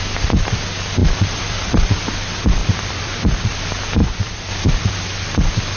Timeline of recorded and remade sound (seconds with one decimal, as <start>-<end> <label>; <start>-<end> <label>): 0.0-1.0 recorded; 1.0-1.9 remade; 1.9-2.6 recorded; 2.6-3.6 remade; 3.6-4.0 recorded; 4.0-4.5 remade; 4.5-5.8 recorded